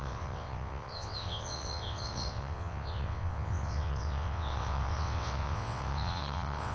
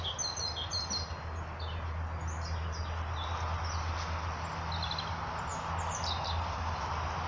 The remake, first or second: first